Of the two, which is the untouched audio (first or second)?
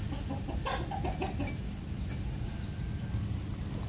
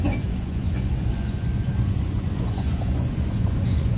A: first